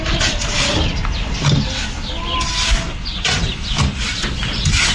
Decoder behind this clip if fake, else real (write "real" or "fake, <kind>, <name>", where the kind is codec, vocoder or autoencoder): real